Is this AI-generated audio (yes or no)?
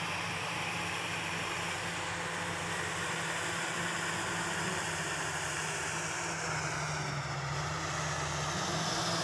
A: no